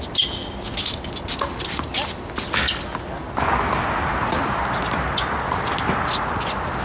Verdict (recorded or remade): recorded